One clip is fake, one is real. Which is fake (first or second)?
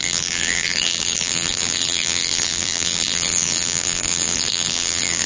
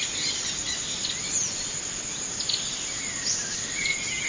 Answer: first